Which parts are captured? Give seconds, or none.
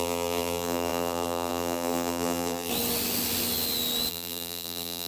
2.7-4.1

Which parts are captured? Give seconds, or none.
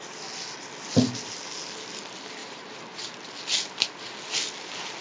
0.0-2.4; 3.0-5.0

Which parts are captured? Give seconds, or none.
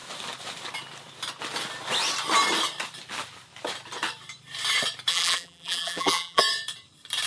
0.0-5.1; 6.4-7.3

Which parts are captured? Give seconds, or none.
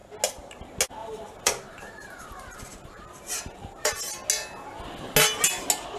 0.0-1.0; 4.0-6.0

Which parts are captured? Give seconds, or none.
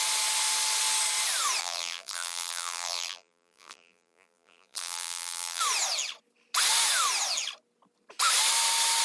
0.0-1.6; 5.6-9.0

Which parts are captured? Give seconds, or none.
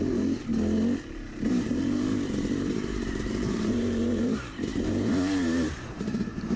0.5-1.5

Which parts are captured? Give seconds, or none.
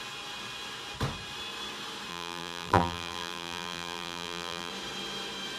0.0-2.1; 4.7-5.6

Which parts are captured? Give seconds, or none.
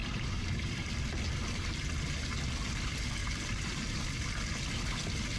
0.9-3.2; 4.0-5.4